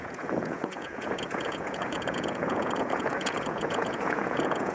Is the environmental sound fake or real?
fake